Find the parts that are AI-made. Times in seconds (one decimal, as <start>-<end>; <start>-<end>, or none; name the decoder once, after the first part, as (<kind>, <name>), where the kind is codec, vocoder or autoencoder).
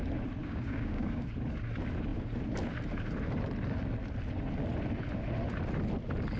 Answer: 0.4-1.3 (codec, DAC)